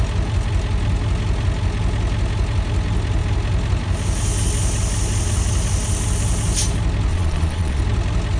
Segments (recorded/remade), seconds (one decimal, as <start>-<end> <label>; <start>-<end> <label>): 0.0-7.1 recorded; 7.1-7.8 remade; 7.8-8.4 recorded